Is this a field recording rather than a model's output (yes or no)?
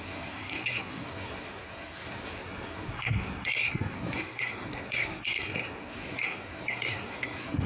no